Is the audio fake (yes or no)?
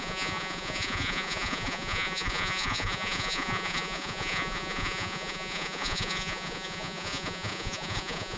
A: yes